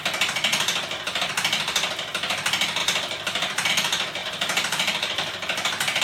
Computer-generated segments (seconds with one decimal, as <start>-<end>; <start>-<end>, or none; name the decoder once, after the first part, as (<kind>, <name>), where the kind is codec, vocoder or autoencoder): 2.8-3.7 (vocoder, BigVGAN v2); 4.2-6.0